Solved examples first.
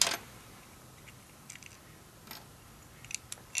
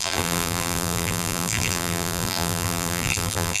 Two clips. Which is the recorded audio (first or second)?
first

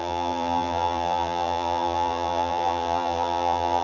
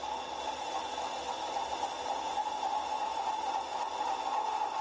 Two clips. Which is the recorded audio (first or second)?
second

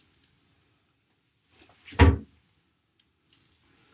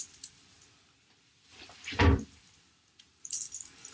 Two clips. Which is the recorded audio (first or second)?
first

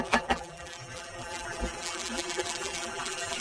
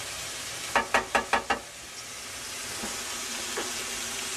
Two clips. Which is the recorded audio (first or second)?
second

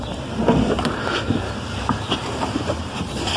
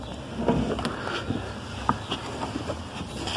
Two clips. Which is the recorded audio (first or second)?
second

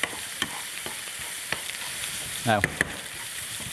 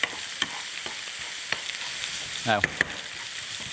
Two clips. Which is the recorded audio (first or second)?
second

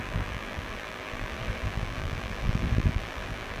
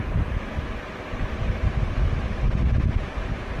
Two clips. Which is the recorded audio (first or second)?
second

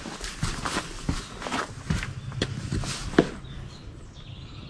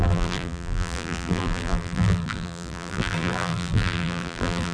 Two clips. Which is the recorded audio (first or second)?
first